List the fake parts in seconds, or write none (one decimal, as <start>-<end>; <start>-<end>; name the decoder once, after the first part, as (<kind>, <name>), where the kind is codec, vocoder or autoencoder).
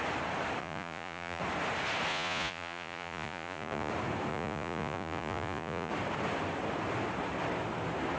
0.6-1.4 (vocoder, Vocos); 2.1-3.9; 4.3-5.9